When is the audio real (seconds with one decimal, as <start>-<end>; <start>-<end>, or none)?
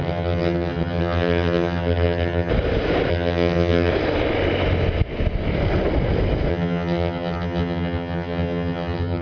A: 2.5-3.1; 3.9-6.5